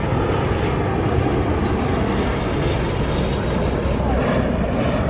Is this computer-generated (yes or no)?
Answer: no